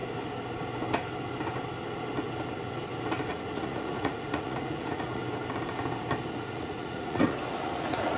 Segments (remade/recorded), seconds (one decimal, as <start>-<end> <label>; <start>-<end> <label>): 0.0-3.3 recorded; 3.3-5.2 remade; 5.2-6.3 recorded; 6.3-8.2 remade